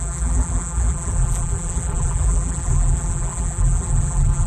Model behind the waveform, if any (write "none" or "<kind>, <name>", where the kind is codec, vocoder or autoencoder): vocoder, BigVGAN v2